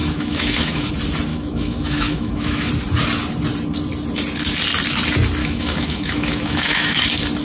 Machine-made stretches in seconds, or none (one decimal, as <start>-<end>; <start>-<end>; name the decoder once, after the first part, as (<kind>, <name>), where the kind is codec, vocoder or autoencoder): 0.0-0.9 (autoencoder, DAC-VAE); 1.3-2.7; 5.4-7.0